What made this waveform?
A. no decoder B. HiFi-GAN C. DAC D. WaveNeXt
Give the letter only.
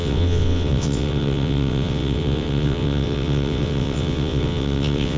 D